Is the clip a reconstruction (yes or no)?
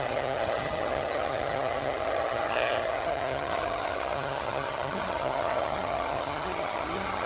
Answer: yes